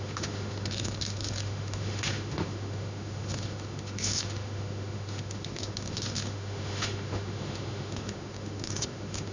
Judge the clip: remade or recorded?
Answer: remade